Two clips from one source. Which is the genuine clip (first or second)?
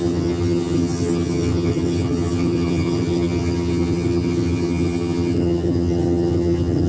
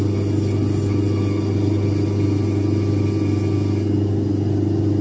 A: second